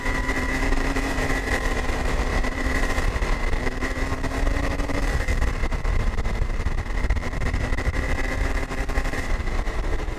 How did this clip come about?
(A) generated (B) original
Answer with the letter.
A